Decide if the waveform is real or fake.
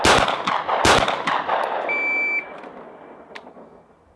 real